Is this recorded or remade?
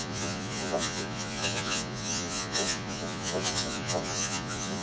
remade